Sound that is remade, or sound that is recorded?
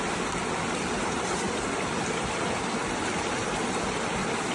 recorded